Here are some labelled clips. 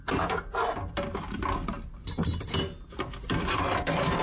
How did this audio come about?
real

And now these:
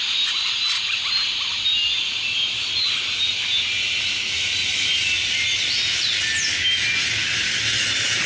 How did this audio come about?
real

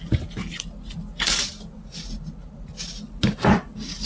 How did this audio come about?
real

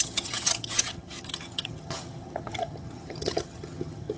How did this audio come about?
fake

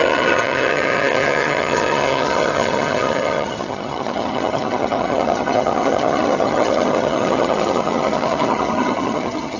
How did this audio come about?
fake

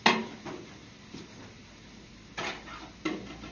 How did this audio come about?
real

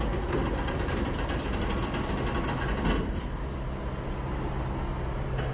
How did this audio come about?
real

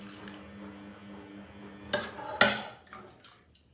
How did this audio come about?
real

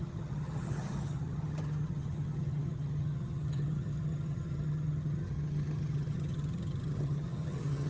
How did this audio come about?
fake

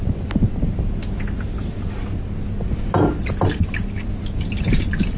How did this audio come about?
real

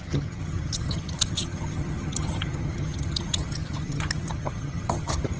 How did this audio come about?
fake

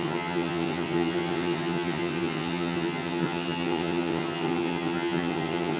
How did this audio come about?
fake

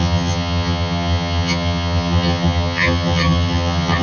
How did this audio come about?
fake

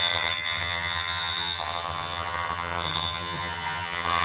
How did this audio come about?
fake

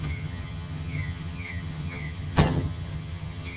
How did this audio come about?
fake